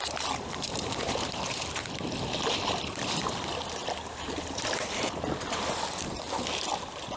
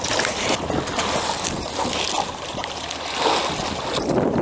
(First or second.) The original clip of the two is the second